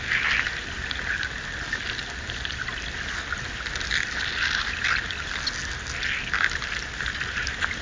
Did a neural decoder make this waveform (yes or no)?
no